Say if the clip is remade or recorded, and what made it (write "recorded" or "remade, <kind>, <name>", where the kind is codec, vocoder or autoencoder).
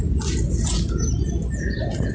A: recorded